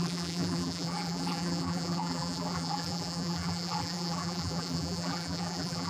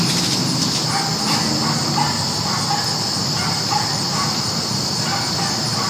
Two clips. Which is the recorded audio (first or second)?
second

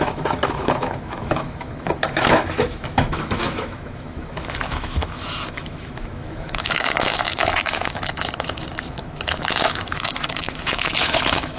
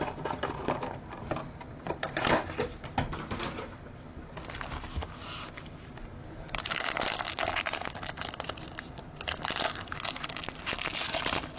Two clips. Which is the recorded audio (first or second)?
second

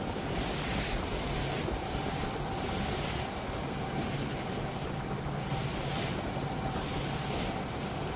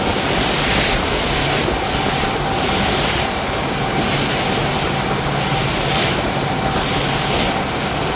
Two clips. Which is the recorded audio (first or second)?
second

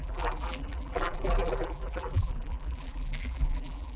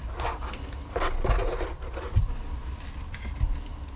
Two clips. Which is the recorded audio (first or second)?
second